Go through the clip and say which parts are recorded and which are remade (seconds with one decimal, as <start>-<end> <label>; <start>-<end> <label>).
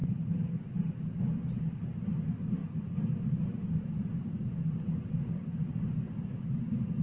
0.0-1.8 remade; 1.8-7.0 recorded